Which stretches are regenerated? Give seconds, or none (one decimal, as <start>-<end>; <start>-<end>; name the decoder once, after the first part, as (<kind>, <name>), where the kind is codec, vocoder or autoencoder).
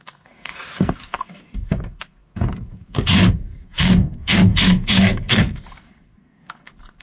0.0-7.0 (codec, SNAC)